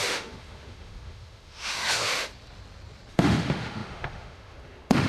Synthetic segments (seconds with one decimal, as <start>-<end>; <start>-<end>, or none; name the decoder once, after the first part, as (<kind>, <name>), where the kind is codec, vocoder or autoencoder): 0.0-2.3 (autoencoder, DAC-VAE); 3.1-5.1